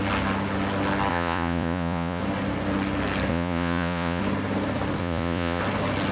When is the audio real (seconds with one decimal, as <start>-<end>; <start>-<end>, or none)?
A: 0.0-1.1; 2.2-3.3; 4.2-5.0; 5.6-6.1